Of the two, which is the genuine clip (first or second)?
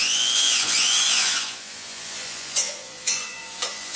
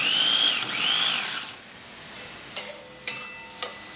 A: second